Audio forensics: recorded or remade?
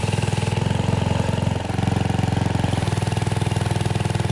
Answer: recorded